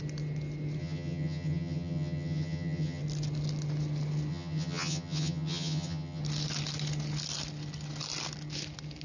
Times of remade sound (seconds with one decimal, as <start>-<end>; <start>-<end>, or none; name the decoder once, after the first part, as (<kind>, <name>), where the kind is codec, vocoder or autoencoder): 0.8-3.0 (vocoder, HiFi-GAN); 4.3-6.2